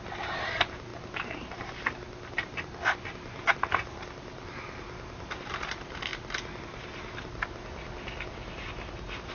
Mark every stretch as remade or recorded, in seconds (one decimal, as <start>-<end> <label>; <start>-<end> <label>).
0.0-9.3 recorded